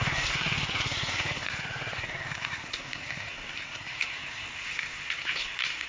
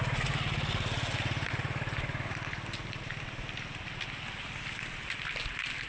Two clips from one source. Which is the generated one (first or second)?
first